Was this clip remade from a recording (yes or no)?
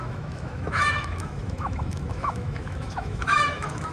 yes